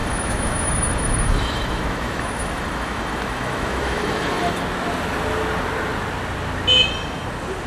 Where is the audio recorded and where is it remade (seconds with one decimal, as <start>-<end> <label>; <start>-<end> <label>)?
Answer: 0.0-4.6 remade; 4.6-7.7 recorded